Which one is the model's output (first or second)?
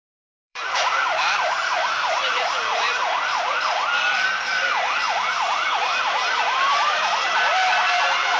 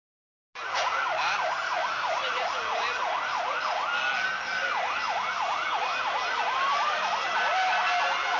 first